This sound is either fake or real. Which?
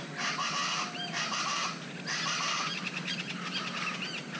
real